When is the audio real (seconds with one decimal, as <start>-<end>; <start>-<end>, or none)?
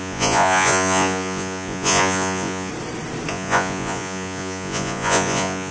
2.7-3.3